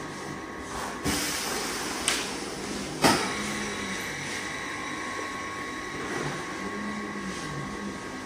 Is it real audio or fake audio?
real